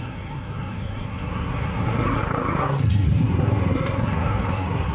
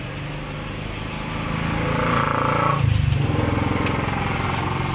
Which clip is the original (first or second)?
second